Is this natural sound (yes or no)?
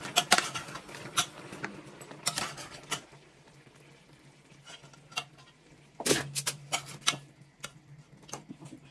yes